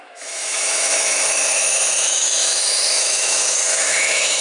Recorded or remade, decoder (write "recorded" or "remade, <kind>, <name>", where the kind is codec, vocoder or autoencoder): remade, autoencoder, DAC-VAE